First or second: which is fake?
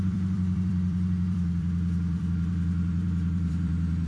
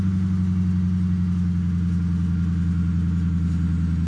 first